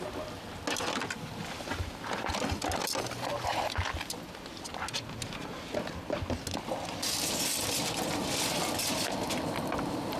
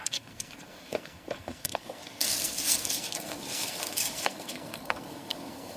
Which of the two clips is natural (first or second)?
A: first